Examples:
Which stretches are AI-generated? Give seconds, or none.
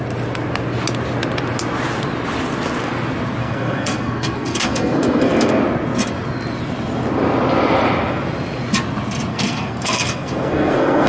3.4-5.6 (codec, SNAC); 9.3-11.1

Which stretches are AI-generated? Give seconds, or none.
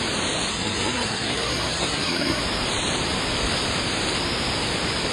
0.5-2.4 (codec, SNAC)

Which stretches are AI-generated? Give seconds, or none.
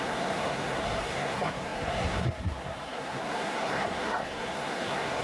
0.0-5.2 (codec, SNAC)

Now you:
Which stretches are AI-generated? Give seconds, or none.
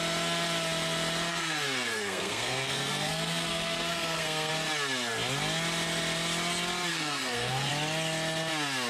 1.3-4.5 (codec, SNAC); 6.9-7.7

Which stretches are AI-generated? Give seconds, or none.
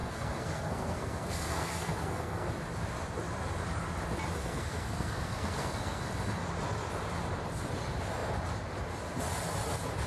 0.0-2.5 (codec, SNAC); 4.4-6.0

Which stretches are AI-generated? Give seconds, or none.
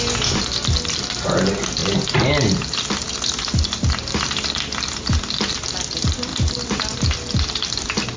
none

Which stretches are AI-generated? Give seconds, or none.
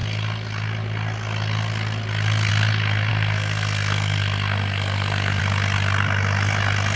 3.1-5.4 (codec, SNAC)